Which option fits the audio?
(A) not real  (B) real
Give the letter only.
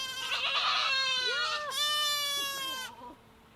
B